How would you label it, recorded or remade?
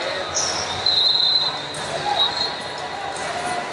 recorded